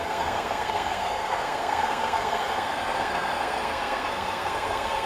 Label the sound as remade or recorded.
remade